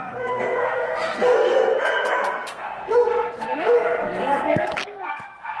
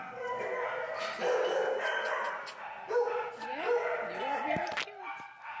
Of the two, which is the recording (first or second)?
second